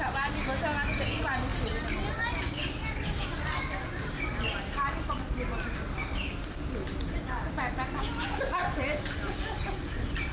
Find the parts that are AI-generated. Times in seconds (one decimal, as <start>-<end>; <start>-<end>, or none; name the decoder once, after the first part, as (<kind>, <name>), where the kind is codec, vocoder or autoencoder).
none